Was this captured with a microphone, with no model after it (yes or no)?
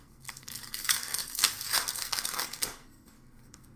no